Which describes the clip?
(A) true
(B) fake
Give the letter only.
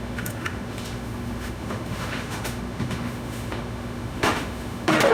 B